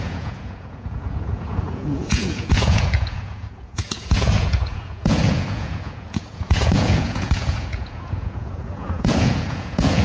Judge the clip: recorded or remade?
remade